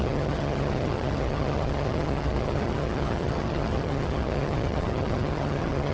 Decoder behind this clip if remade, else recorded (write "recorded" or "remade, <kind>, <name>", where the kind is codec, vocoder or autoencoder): remade, vocoder, HiFi-GAN